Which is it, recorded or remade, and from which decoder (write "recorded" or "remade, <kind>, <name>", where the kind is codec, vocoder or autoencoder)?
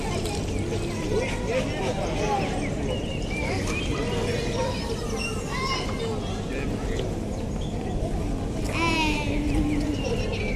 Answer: recorded